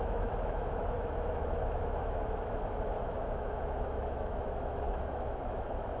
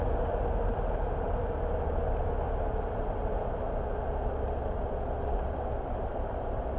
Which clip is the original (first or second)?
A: second